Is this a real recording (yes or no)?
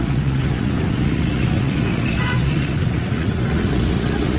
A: no